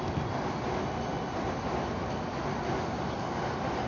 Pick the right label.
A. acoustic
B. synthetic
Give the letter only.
A